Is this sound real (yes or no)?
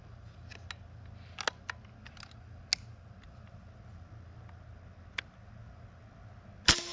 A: yes